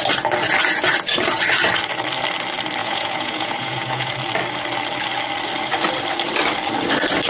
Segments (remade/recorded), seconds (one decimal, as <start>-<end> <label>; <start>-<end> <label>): 0.0-2.8 recorded; 2.8-4.1 remade; 4.1-7.3 recorded